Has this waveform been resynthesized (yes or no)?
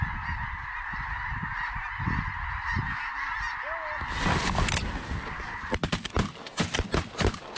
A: no